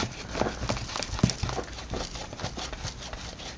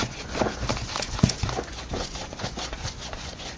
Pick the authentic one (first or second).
first